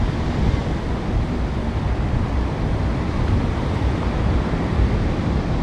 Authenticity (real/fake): fake